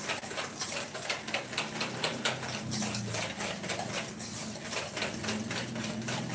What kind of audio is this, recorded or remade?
recorded